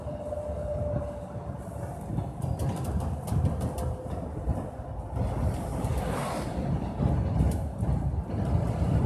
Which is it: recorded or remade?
recorded